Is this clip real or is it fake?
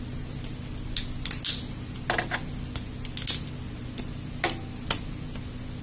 real